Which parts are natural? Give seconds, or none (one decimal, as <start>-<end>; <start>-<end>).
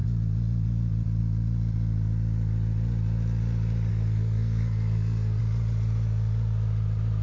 0.0-3.9; 5.4-7.2